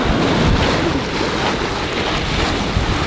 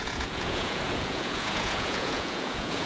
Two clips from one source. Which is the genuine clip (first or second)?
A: first